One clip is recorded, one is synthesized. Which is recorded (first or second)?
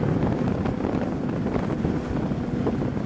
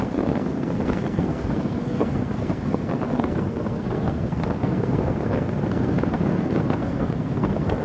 first